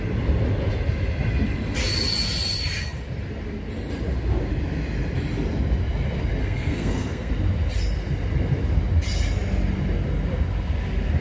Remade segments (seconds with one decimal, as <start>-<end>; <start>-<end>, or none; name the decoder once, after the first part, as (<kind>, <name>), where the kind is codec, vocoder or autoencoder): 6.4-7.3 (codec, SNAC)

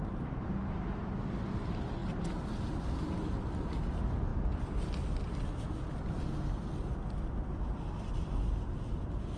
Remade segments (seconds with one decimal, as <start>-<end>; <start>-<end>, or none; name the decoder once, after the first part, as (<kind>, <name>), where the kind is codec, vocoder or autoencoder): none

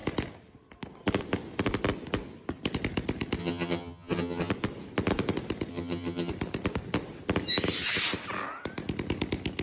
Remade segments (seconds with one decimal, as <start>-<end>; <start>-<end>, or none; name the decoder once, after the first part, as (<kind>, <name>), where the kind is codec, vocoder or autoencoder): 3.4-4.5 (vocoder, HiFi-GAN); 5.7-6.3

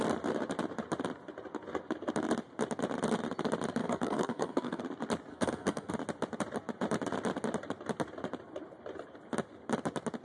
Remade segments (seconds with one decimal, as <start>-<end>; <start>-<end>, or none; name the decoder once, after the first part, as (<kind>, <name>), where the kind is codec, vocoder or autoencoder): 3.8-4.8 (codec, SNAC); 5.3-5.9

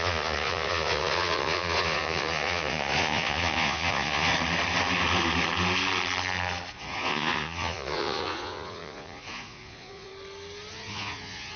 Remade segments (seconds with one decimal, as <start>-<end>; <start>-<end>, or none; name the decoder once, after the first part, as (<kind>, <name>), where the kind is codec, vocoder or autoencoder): 0.0-4.3 (vocoder, Vocos); 6.7-10.1; 10.7-11.6

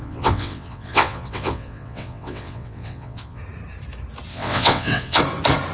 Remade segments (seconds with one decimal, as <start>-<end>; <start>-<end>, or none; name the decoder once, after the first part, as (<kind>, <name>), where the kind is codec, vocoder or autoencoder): 0.0-3.4 (vocoder, WaveNeXt); 4.3-5.2

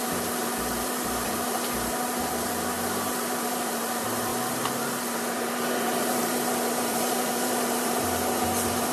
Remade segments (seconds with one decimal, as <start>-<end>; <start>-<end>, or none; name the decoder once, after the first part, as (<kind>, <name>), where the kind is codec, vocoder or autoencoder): 0.0-8.9 (vocoder, BigVGAN v2)

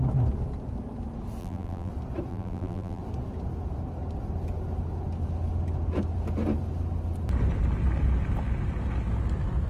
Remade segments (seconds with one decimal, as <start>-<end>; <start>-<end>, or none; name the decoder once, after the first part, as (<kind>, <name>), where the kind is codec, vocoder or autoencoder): 1.4-1.9 (vocoder, BigVGAN v2); 2.3-3.0